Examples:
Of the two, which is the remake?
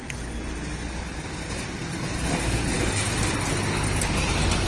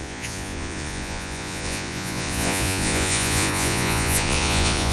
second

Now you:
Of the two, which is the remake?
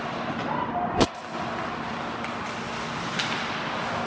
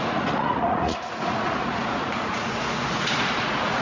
second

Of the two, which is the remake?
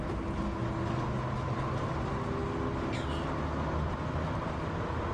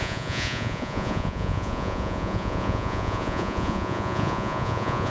second